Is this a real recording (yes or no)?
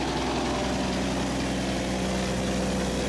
yes